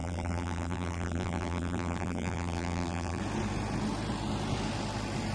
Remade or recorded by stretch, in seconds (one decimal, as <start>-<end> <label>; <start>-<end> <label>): 0.0-3.2 remade; 3.2-5.3 recorded